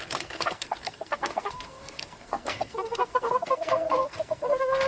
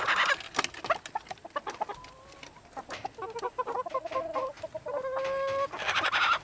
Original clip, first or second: second